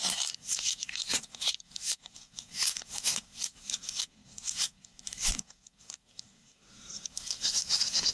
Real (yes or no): no